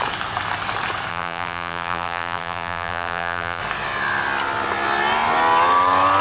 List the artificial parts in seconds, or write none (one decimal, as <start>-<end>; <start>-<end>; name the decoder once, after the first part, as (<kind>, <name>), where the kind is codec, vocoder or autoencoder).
1.1-3.6 (vocoder, BigVGAN v2)